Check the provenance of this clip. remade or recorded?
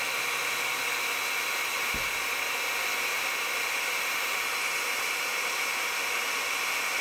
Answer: recorded